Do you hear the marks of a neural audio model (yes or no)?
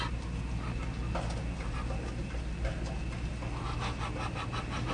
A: no